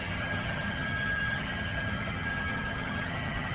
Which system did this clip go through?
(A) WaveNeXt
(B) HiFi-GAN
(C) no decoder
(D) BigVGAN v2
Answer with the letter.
B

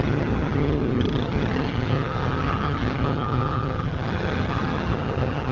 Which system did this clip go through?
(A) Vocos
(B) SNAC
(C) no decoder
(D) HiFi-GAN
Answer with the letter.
D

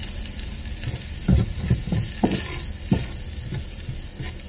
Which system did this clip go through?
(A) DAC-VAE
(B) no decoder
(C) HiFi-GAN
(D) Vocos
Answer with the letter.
B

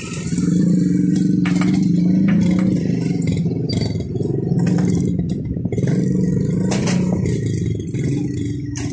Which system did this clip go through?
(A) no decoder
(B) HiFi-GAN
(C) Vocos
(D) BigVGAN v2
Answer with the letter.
A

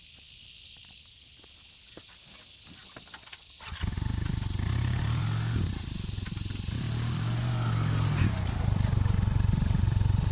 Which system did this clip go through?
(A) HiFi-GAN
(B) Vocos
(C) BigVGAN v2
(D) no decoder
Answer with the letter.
D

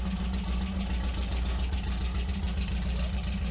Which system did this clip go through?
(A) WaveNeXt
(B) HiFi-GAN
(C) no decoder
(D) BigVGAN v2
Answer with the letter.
C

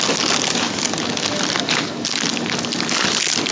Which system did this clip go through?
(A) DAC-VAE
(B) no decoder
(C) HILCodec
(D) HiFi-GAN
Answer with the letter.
B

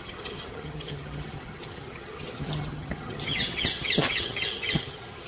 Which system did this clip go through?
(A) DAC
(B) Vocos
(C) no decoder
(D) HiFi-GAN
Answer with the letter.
D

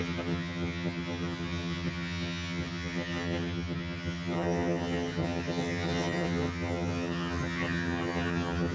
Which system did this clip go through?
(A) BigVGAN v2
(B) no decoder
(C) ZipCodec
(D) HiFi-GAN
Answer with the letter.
D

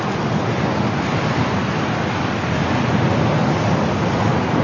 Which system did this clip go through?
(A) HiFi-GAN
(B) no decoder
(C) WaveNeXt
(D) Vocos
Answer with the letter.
B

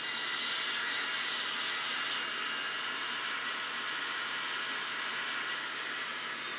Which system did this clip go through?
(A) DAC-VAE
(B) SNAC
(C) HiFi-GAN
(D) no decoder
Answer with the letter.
D